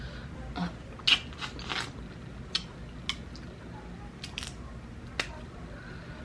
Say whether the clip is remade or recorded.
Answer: recorded